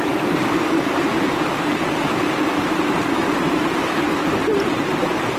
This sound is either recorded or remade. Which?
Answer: remade